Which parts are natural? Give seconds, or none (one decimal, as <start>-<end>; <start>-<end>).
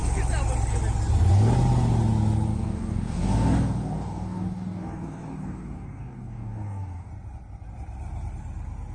0.0-2.5; 7.1-8.9